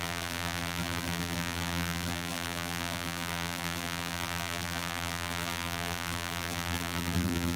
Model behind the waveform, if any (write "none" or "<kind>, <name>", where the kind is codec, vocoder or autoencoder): vocoder, BigVGAN v2